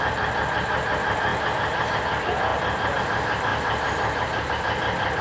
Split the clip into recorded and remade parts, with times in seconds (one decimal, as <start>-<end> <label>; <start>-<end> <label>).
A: 0.0-1.3 recorded; 1.3-1.9 remade; 1.9-3.5 recorded; 3.5-4.5 remade; 4.5-5.2 recorded